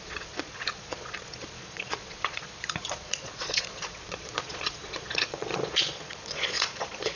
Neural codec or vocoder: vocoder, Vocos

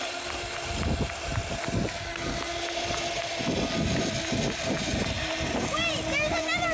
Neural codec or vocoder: none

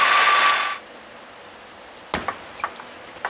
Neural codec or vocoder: none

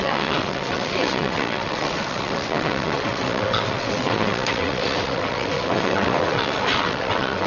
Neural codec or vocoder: vocoder, WaveNeXt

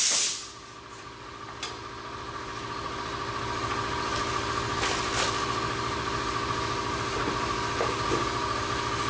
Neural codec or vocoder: none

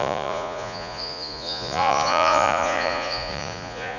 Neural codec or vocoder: vocoder, Vocos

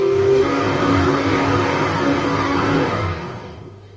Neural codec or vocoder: codec, DAC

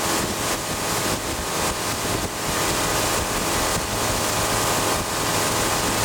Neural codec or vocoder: none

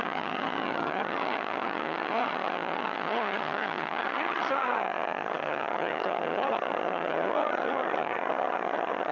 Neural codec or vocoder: vocoder, HiFi-GAN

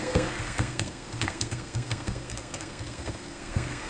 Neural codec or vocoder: codec, SNAC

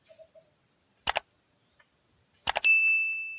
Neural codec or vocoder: none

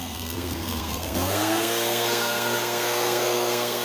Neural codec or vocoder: codec, SNAC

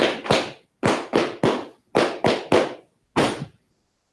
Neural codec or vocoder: none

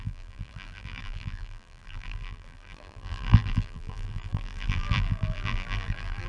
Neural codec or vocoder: vocoder, BigVGAN v2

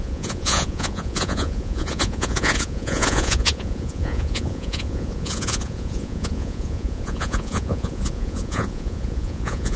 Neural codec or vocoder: vocoder, Vocos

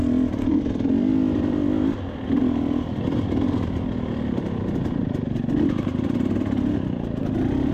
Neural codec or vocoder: none